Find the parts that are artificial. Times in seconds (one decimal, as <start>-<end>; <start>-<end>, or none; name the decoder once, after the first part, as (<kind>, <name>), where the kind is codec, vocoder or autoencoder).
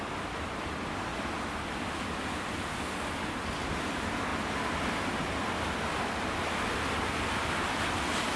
none